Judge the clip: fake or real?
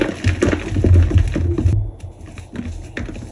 real